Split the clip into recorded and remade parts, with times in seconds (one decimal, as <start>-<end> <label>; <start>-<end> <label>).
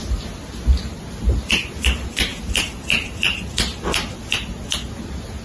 0.0-5.4 recorded